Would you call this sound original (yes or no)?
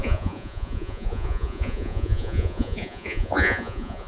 no